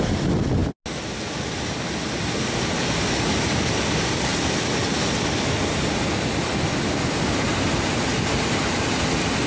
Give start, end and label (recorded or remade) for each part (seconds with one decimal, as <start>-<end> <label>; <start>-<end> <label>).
0.0-9.5 recorded